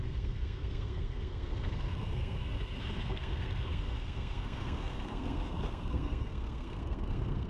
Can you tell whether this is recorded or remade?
remade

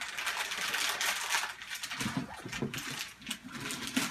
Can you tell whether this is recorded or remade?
recorded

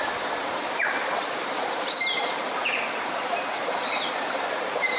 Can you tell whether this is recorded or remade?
remade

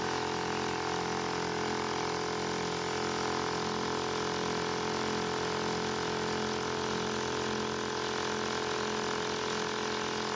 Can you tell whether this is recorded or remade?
recorded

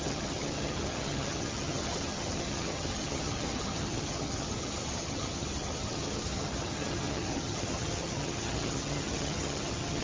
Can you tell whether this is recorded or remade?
remade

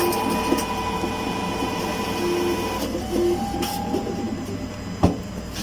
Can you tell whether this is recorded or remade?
recorded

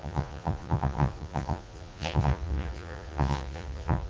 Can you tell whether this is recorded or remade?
remade